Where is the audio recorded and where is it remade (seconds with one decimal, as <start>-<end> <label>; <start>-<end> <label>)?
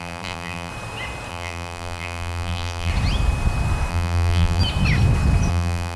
0.0-0.7 remade; 0.7-1.3 recorded; 1.3-2.9 remade; 2.9-3.9 recorded; 3.9-4.6 remade; 4.6-5.5 recorded; 5.5-6.0 remade